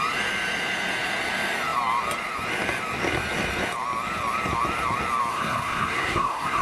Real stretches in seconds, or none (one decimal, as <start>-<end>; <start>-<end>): 0.0-5.3